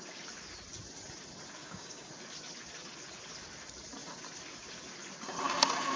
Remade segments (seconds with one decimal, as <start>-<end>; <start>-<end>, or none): 1.6-2.1